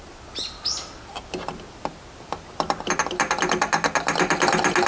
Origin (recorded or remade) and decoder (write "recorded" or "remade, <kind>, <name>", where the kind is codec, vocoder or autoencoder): recorded